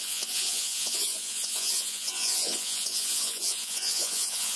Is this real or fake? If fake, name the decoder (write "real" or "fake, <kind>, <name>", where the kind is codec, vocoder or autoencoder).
fake, vocoder, Vocos